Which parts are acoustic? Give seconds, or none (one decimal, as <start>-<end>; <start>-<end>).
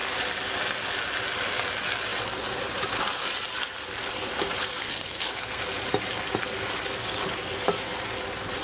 0.0-4.8; 5.6-8.6